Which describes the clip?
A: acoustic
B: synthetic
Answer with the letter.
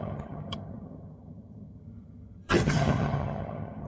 B